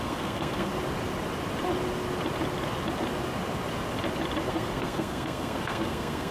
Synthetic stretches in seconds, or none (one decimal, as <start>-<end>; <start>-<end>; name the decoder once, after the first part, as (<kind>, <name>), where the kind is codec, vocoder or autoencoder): 0.0-0.7 (codec, SNAC); 4.5-6.3

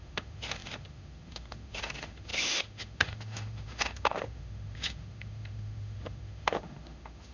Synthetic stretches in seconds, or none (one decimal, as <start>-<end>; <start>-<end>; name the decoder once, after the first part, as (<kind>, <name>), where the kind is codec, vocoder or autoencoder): 0.0-7.3 (autoencoder, DAC-VAE)

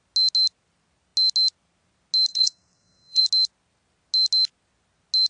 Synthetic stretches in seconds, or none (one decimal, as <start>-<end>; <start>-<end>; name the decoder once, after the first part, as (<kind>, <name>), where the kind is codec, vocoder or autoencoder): 2.3-3.2 (codec, SNAC)

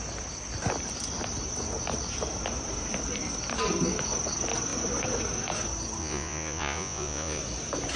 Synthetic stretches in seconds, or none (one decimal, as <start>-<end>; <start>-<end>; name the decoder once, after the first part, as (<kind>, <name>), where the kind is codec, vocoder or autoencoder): 6.0-7.4 (vocoder, Vocos)

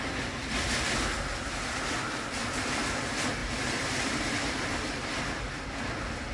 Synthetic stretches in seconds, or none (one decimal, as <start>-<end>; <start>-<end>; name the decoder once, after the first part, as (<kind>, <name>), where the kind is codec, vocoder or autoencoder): 3.4-5.2 (vocoder, BigVGAN v2)

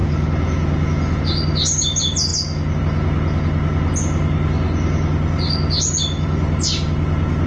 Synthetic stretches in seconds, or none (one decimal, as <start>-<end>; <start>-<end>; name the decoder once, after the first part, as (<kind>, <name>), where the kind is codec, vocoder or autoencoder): 0.0-1.2 (vocoder, Vocos)

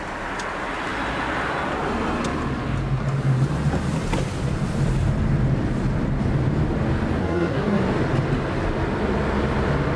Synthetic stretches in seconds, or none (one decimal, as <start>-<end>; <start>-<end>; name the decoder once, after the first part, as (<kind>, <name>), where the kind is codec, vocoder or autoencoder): 7.2-7.8 (codec, SNAC)